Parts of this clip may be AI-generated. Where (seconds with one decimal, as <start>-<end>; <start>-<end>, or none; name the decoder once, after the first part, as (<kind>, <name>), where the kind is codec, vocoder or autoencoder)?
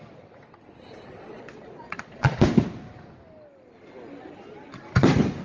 1.3-2.4 (vocoder, Vocos)